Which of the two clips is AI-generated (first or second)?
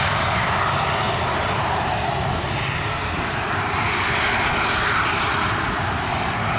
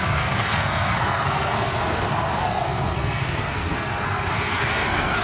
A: second